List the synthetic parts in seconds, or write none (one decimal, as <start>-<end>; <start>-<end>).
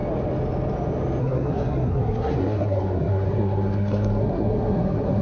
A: 1.2-5.2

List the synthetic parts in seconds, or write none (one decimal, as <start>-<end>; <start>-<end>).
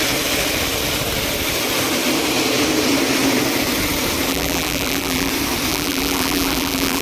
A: 4.3-5.3; 5.7-7.0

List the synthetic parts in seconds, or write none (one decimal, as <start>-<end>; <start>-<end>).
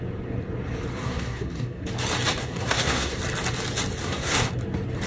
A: 1.0-1.9; 2.4-3.2; 4.0-4.5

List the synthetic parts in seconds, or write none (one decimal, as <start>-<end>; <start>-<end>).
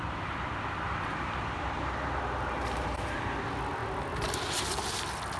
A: none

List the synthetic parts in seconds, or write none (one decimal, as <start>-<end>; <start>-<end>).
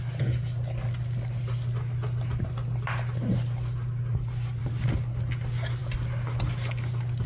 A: none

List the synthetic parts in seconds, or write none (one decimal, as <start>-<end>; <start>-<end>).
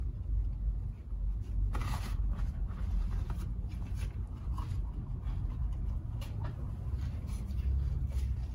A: 1.8-3.2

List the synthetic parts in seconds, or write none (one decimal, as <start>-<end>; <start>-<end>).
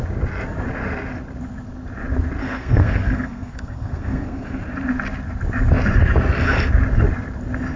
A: 2.4-4.6